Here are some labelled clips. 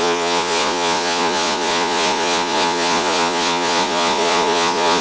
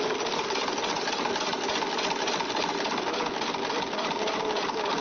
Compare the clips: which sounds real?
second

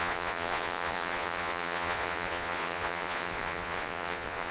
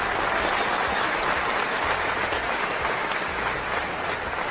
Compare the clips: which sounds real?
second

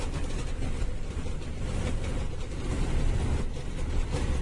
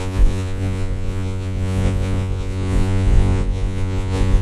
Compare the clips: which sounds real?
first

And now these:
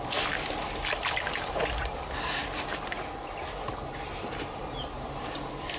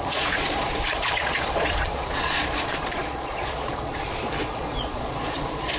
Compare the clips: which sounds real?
first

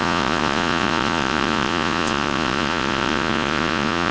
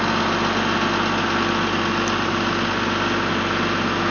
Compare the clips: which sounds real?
second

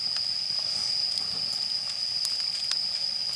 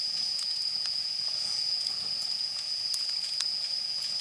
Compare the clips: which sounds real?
first